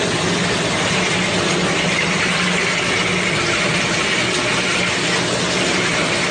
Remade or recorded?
recorded